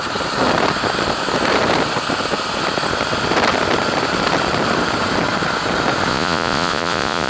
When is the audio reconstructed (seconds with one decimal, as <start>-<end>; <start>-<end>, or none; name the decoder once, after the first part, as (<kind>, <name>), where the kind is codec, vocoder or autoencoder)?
6.1-7.3 (vocoder, Vocos)

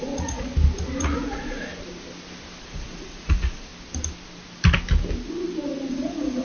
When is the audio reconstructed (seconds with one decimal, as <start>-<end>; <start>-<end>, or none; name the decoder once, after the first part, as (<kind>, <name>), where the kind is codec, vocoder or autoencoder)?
0.0-0.5 (vocoder, Vocos); 1.0-1.7; 2.6-3.7; 5.9-6.4